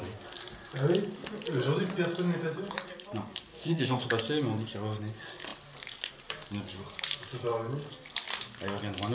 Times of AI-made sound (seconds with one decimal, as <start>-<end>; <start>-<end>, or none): 3.5-4.1

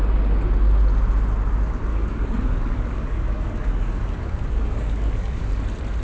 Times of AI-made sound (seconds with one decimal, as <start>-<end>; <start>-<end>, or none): 1.9-5.5

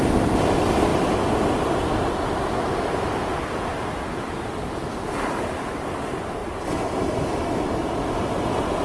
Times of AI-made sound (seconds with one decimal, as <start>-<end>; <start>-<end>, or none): none

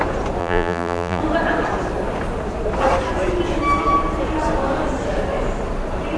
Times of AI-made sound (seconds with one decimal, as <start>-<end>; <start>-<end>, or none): 0.4-1.2

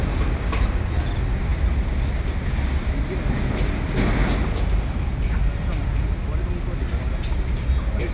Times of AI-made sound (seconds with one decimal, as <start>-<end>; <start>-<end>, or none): none